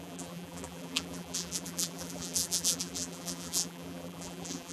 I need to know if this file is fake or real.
fake